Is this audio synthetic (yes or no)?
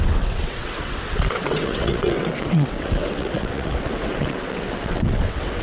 yes